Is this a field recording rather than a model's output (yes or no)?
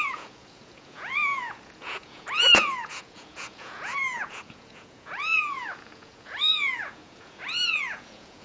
no